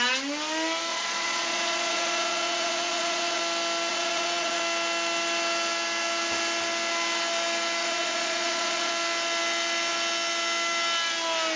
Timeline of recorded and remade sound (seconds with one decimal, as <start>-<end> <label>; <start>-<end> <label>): 0.0-0.9 recorded; 0.9-3.4 remade; 3.4-3.9 recorded; 3.9-4.6 remade; 4.6-7.8 recorded; 7.8-8.9 remade; 8.9-11.6 recorded